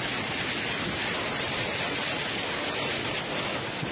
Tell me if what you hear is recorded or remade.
recorded